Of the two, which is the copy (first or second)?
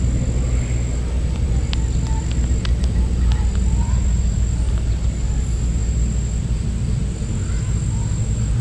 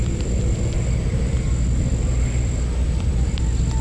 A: second